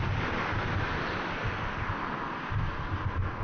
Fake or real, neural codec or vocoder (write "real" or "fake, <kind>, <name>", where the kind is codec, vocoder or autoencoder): real